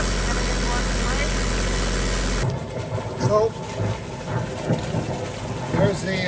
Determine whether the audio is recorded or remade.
recorded